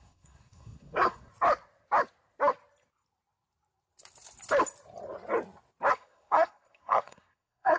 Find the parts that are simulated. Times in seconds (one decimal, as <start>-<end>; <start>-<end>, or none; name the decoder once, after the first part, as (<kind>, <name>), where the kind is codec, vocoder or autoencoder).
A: 0.0-1.3 (codec, SNAC); 5.9-7.8

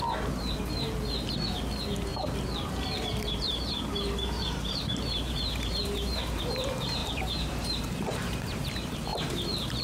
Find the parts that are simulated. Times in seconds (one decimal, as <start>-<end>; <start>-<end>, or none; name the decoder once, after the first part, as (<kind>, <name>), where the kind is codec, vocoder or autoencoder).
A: 2.1-6.4 (vocoder, BigVGAN v2); 7.0-8.7

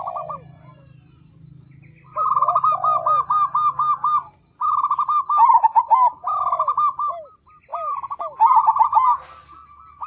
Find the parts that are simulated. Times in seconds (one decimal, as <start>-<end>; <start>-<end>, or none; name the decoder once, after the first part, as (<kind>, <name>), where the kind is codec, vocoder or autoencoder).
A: none

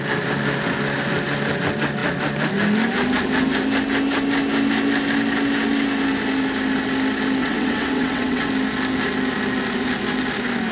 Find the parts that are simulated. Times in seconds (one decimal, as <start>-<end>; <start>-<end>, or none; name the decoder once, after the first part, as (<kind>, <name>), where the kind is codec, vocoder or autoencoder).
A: 7.4-8.5 (vocoder, WaveNeXt)

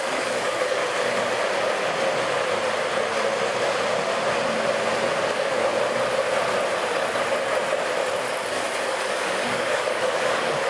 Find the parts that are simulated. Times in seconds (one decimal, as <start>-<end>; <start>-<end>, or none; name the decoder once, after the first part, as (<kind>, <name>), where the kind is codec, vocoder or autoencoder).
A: 0.0-0.8 (codec, DAC); 5.3-5.7; 8.8-10.7

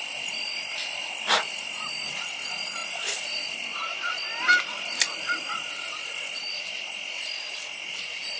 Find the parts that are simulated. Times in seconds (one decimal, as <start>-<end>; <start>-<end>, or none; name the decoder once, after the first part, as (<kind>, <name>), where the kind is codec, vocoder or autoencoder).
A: none

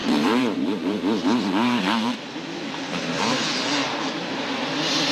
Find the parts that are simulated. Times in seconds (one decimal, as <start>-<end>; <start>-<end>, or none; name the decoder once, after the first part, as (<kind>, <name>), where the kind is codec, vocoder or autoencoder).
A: 0.0-2.9 (vocoder, BigVGAN v2); 3.8-4.6

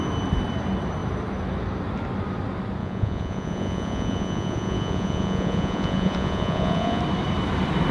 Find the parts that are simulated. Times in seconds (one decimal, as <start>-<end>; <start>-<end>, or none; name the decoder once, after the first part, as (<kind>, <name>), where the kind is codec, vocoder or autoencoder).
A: 2.8-7.0 (vocoder, Vocos)